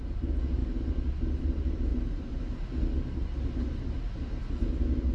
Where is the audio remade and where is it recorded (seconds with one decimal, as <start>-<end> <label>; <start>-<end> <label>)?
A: 0.0-5.1 recorded